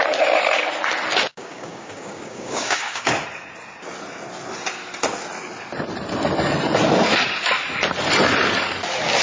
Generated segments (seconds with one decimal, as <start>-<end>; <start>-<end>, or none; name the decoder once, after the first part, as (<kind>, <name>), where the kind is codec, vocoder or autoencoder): 1.3-3.1 (codec, DAC)